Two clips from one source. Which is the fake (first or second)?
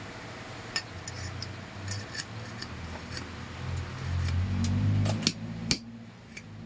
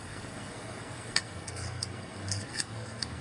second